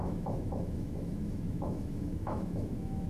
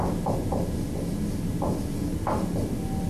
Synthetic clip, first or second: first